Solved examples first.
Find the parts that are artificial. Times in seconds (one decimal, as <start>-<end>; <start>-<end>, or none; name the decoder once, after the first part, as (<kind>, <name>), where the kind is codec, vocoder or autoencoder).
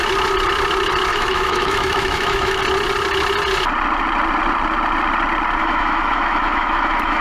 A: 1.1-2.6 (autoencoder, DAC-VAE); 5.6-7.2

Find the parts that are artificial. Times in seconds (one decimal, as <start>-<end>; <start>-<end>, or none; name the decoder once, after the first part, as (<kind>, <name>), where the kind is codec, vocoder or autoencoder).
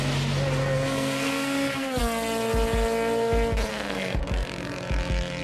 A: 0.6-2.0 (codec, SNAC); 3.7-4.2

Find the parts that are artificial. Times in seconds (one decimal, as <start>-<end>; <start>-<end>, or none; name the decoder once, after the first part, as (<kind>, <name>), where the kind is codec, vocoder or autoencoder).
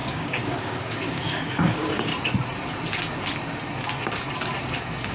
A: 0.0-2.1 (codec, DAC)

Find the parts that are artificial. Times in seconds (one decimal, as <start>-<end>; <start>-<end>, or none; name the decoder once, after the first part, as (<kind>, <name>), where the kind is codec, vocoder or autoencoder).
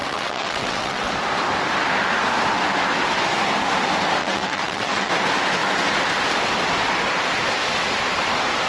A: 0.0-1.1 (vocoder, WaveNeXt); 4.2-5.1